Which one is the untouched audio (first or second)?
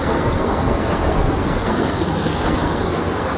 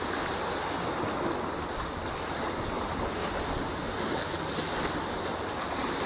second